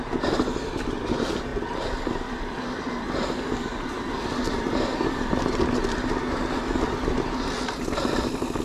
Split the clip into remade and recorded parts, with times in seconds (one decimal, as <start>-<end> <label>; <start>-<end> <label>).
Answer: 0.0-8.6 recorded